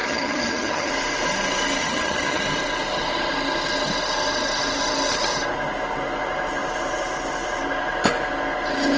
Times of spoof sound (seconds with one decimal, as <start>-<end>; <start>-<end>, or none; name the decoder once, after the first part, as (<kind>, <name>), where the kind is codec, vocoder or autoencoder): 0.0-0.9 (vocoder, HiFi-GAN); 1.8-2.4